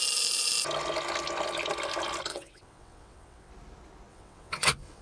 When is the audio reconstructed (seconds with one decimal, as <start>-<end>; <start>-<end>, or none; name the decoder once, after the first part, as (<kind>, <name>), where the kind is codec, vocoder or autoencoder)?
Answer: 2.3-3.5 (vocoder, WaveNeXt); 4.1-5.0